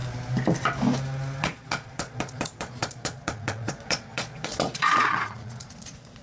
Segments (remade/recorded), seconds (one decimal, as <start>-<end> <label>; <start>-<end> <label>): 0.0-1.4 recorded; 1.4-6.2 remade